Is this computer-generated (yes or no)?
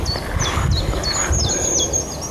no